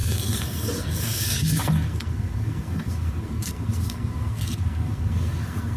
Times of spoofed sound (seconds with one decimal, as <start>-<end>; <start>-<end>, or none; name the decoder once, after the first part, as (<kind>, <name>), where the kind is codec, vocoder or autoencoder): 0.0-5.8 (codec, SNAC)